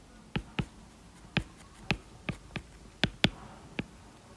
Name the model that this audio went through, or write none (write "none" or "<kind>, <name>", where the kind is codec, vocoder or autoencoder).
none